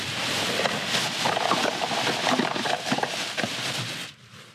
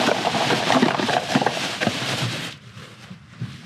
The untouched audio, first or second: first